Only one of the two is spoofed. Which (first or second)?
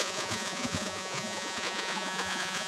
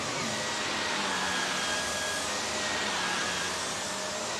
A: first